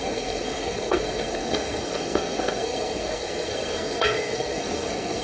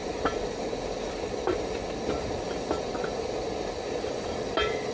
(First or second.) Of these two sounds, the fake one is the first